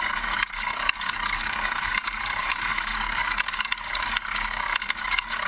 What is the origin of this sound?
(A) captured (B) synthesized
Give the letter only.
B